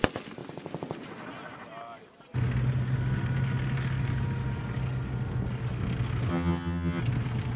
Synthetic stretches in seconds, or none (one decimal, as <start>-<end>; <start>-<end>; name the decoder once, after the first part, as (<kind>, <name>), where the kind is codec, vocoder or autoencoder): 6.3-7.0 (vocoder, HiFi-GAN)

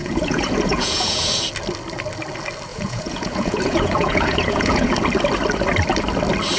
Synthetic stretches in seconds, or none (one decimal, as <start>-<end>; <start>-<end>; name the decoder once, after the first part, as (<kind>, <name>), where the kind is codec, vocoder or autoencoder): 0.0-1.3 (vocoder, Vocos); 2.7-4.9